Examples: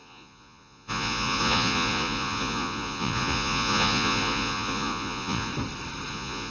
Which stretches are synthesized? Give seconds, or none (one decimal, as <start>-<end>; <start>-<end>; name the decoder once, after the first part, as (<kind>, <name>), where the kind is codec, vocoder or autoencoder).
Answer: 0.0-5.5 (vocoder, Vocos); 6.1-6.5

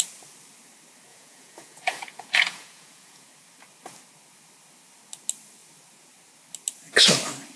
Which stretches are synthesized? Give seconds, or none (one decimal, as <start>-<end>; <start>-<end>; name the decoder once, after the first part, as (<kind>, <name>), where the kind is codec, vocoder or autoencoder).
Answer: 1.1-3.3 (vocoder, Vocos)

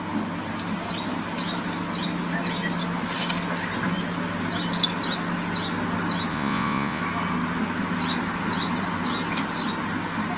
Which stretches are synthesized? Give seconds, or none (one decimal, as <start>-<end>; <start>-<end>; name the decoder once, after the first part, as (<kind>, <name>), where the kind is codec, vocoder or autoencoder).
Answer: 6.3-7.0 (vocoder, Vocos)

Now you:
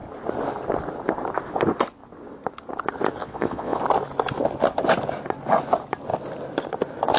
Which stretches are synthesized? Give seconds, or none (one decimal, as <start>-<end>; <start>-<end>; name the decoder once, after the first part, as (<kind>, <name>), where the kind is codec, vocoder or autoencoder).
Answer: 3.2-3.8 (vocoder, Vocos)